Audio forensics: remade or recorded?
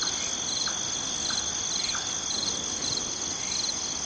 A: recorded